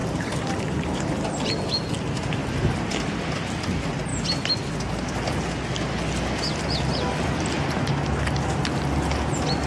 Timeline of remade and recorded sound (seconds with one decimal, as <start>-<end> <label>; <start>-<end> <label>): 0.0-1.9 remade; 1.9-2.4 recorded; 2.4-3.2 remade; 3.2-9.7 recorded